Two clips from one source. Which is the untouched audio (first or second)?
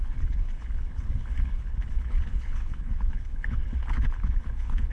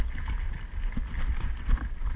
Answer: second